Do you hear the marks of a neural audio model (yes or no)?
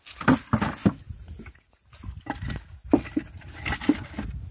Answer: no